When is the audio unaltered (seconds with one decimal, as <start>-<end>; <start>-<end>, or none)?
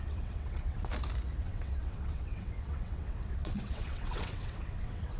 0.9-1.4